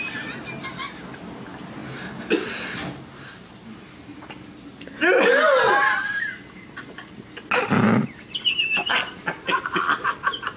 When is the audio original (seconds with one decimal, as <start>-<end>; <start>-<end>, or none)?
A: 0.0-10.6